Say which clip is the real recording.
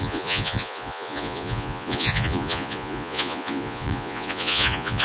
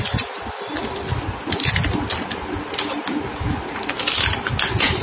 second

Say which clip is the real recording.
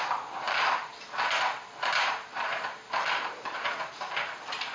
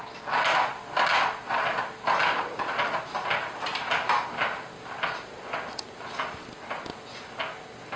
second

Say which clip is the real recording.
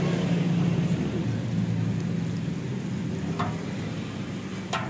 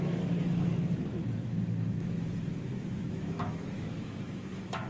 first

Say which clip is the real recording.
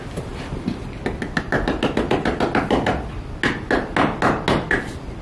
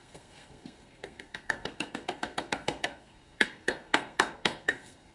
first